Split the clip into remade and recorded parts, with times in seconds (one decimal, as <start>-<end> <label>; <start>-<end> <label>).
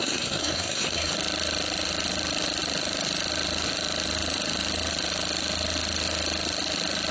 0.0-1.1 remade; 1.1-7.1 recorded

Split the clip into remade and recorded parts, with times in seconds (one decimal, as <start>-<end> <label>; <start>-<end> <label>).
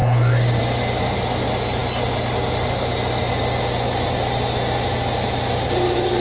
0.0-6.2 recorded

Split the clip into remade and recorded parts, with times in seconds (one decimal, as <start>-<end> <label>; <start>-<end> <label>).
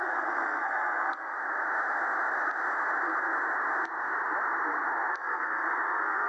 0.0-1.3 remade; 1.3-5.1 recorded; 5.1-6.3 remade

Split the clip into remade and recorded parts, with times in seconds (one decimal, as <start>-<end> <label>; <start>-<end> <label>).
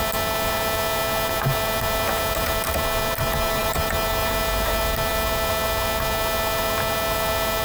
0.0-7.6 recorded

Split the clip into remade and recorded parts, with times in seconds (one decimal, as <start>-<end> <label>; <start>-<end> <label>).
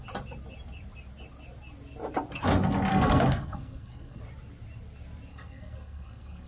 0.0-2.9 recorded; 2.9-4.2 remade; 4.2-5.3 recorded; 5.3-6.5 remade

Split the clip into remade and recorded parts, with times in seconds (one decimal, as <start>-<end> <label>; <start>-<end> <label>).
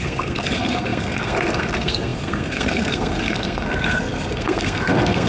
0.0-5.3 remade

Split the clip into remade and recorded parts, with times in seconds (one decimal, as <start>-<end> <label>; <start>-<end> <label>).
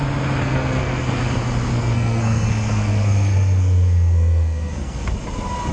0.0-0.4 recorded; 0.4-1.2 remade; 1.2-1.7 recorded; 1.7-5.1 remade; 5.1-5.7 recorded